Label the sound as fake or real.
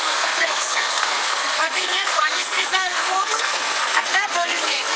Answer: fake